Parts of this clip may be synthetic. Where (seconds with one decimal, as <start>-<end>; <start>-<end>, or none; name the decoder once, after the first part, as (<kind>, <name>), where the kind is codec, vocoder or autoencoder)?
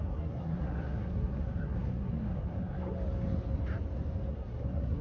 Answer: 0.0-2.8 (codec, SNAC); 4.3-5.0